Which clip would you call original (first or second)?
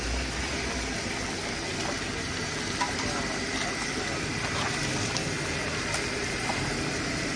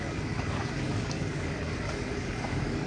first